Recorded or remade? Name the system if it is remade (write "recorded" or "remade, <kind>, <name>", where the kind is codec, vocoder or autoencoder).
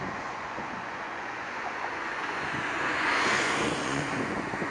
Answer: remade, vocoder, Vocos